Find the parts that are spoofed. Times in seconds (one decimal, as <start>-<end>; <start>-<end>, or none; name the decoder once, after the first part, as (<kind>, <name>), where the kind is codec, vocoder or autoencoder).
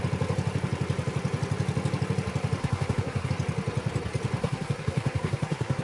2.6-3.3 (codec, SNAC); 4.4-5.8